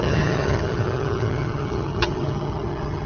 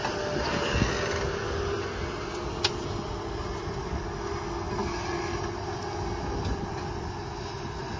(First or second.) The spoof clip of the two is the first